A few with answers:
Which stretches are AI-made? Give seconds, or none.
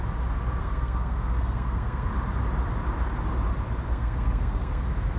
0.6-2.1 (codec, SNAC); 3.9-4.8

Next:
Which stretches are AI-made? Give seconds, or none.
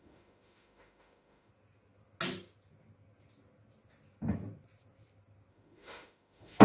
0.0-1.5 (autoencoder, DAC-VAE); 5.5-6.6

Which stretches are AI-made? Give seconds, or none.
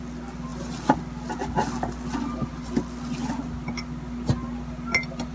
none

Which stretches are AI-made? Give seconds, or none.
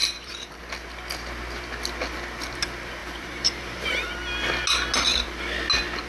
0.0-0.6 (vocoder, BigVGAN v2); 3.0-4.1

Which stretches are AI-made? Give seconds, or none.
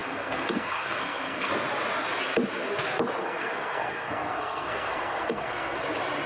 0.0-1.5 (codec, SNAC); 3.2-5.8